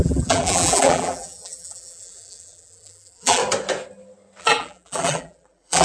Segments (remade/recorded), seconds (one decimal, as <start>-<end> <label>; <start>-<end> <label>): 0.0-3.4 remade; 3.4-4.4 recorded; 4.4-5.8 remade